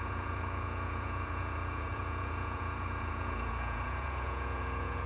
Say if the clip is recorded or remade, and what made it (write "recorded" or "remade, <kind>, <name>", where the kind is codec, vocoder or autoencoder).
remade, vocoder, Vocos